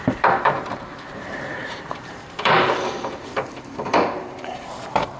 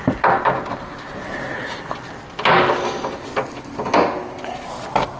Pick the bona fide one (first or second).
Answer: second